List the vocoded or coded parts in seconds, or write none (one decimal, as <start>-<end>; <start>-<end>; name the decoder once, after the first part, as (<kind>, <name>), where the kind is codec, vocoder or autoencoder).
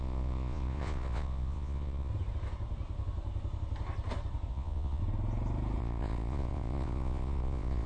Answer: 0.0-2.1 (vocoder, Vocos); 4.5-5.0; 5.8-7.9